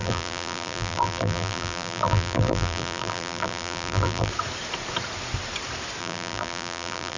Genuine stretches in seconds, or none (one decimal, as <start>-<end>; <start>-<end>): 4.3-6.0